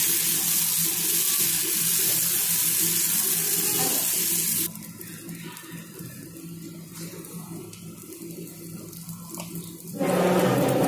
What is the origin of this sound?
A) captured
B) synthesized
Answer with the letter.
A